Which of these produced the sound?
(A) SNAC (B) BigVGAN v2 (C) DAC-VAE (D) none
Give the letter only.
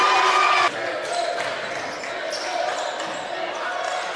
D